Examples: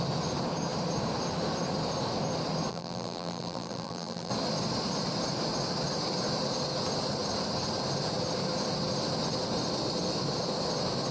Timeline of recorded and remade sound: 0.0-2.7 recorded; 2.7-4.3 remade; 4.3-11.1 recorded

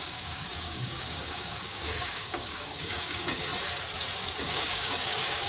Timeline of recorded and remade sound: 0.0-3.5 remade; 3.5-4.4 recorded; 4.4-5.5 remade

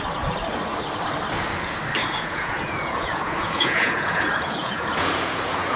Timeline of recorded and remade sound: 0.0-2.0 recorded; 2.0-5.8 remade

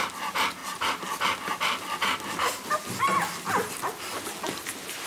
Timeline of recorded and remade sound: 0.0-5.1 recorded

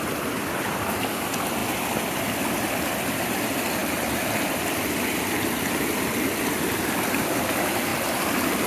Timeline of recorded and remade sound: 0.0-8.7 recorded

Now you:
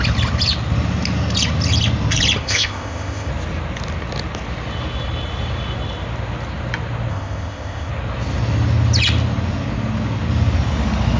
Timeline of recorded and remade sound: 0.0-2.4 recorded; 2.4-3.3 remade; 3.3-7.1 recorded; 7.1-7.9 remade; 7.9-11.2 recorded

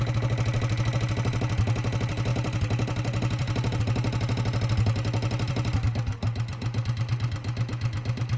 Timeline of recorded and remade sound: 0.0-8.4 recorded